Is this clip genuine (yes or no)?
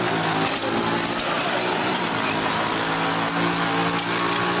yes